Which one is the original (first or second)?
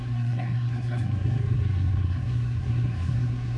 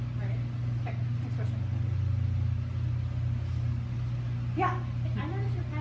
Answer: second